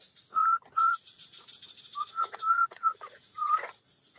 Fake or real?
fake